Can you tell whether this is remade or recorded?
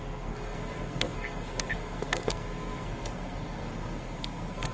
remade